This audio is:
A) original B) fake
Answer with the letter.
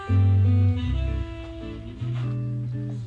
A